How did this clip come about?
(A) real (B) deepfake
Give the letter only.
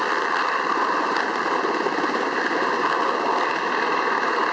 A